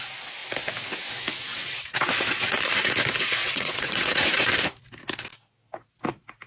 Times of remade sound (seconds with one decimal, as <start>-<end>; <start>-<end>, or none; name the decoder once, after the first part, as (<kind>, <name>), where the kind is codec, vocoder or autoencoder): 1.5-2.6 (vocoder, WaveNeXt); 3.4-4.5